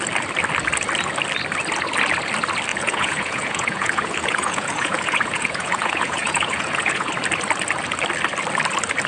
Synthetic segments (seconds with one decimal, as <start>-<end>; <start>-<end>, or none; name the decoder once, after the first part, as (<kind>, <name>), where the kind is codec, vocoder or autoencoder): 2.7-7.1 (vocoder, Vocos)